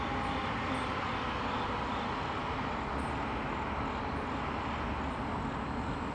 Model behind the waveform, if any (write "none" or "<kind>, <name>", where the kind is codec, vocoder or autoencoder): none